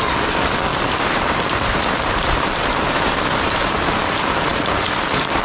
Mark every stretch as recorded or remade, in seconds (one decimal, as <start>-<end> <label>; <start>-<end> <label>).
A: 0.0-0.7 recorded; 0.7-3.9 remade; 3.9-4.5 recorded; 4.5-5.4 remade